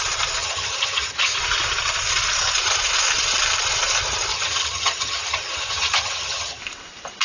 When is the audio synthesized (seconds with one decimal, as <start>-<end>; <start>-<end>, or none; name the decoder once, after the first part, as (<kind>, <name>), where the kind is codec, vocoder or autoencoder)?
0.4-1.4 (vocoder, HiFi-GAN); 4.3-6.6